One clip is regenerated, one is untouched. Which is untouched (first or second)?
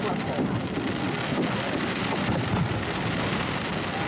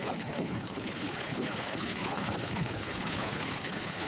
first